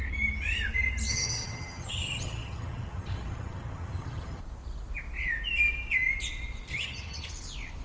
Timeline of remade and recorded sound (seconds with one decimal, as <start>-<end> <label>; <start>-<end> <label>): 0.0-1.1 recorded; 1.1-4.4 remade; 4.4-6.7 recorded; 6.7-7.3 remade; 7.3-7.8 recorded